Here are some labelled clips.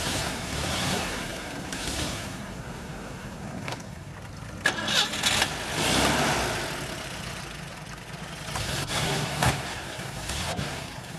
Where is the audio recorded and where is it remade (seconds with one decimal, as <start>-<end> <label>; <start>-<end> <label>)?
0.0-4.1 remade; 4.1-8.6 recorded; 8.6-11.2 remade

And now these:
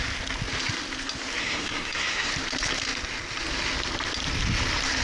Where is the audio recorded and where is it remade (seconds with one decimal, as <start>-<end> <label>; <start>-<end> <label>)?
0.0-1.4 recorded; 1.4-2.3 remade; 2.3-5.0 recorded

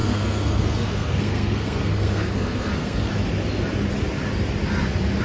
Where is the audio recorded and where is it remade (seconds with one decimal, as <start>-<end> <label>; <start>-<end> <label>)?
0.0-3.1 remade; 3.1-5.2 recorded

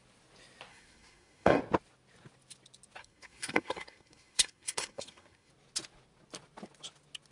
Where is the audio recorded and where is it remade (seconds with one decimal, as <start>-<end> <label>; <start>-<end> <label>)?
0.0-0.7 recorded; 0.7-1.6 remade; 1.6-3.0 recorded; 3.0-5.5 remade; 5.5-7.3 recorded

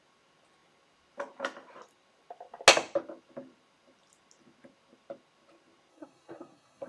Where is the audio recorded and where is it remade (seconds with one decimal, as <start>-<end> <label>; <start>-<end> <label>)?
0.0-5.9 recorded; 5.9-6.9 remade